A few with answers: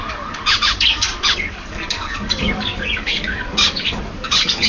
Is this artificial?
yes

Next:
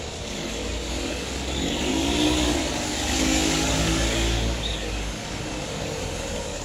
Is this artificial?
yes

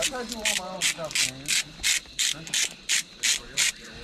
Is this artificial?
no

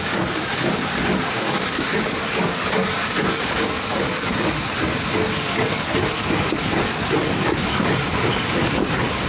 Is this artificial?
yes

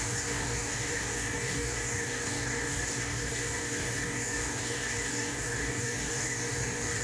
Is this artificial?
yes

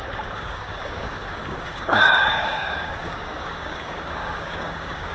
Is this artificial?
yes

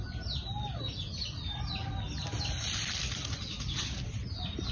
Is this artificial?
no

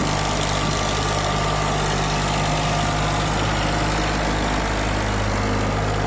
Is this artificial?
no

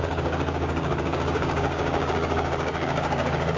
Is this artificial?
yes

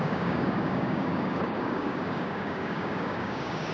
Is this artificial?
yes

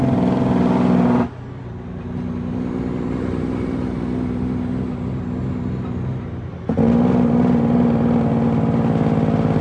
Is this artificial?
no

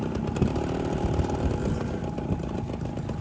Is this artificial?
no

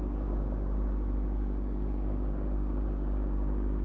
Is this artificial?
yes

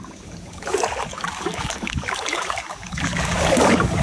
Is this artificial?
yes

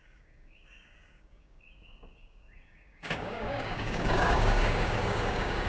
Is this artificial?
yes